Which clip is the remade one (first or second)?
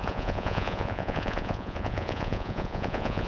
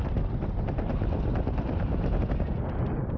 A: first